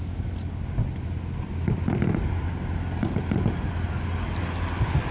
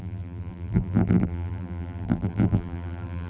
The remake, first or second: second